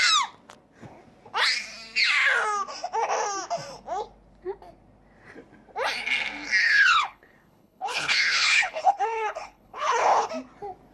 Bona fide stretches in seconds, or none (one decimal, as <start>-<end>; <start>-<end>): 0.0-6.6; 10.3-10.9